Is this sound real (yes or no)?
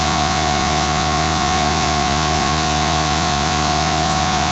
no